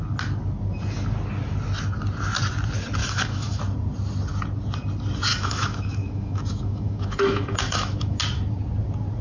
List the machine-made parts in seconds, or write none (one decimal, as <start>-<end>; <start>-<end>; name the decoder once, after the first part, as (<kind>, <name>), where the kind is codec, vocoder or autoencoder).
3.0-3.6 (autoencoder, DAC-VAE); 5.3-8.2